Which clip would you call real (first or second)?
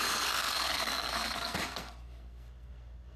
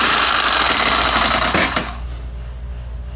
second